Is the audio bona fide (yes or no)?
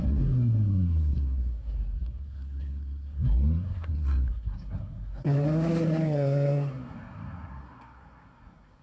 no